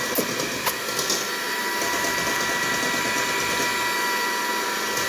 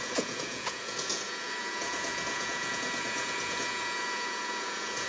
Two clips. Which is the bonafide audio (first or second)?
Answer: first